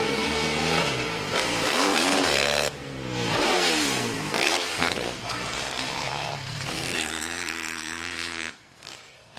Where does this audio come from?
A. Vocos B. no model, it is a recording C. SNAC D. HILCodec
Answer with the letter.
C